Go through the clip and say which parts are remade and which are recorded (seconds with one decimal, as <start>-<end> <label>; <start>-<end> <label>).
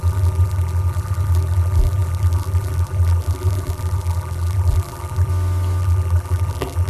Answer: 0.0-5.3 remade; 5.3-5.8 recorded; 5.8-6.9 remade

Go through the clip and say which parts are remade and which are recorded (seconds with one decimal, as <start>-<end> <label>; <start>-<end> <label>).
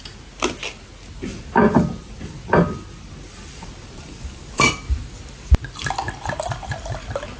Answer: 0.0-1.3 recorded; 1.3-4.7 remade; 4.7-7.4 recorded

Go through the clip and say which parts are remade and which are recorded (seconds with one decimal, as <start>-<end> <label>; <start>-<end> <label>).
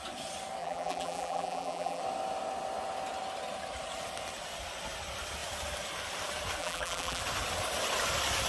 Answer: 0.0-0.6 recorded; 0.6-2.0 remade; 2.0-6.6 recorded; 6.6-7.2 remade; 7.2-8.5 recorded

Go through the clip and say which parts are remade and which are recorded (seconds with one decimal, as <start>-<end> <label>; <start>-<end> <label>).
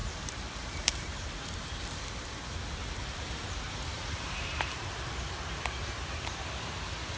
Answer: 0.0-1.1 remade; 1.1-2.8 recorded; 2.8-5.2 remade; 5.2-7.2 recorded